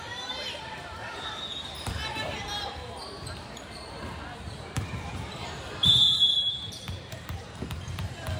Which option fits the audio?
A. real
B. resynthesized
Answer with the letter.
B